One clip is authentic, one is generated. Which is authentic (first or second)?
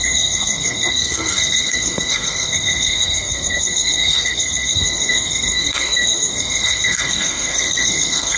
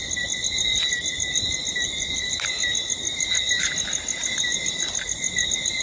second